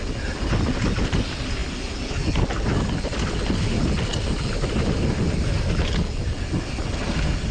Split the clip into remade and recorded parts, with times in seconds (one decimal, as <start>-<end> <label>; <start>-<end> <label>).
0.0-7.5 recorded